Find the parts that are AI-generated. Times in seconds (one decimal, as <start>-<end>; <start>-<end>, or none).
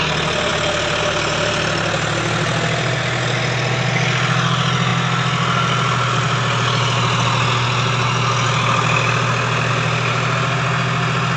none